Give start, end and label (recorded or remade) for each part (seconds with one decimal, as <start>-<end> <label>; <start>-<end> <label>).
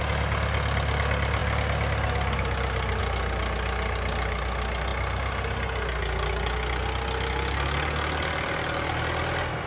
0.0-9.7 recorded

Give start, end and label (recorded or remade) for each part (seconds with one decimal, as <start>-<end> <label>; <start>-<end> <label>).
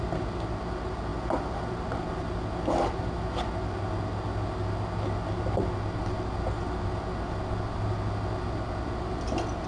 0.0-9.7 recorded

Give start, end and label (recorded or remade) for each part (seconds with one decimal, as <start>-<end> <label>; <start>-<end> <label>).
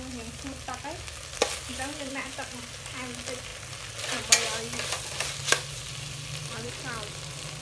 0.0-7.6 recorded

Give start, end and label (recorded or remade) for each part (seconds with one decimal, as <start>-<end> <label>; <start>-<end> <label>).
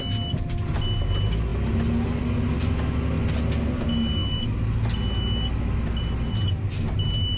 0.0-7.4 recorded